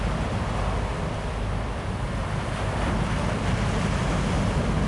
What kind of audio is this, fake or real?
real